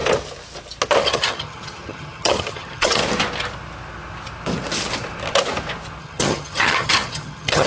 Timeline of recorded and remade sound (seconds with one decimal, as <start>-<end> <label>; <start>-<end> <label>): 0.0-1.0 recorded; 1.0-3.0 remade; 3.0-6.0 recorded; 6.0-7.7 remade